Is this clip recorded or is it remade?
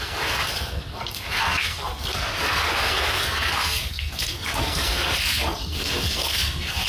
remade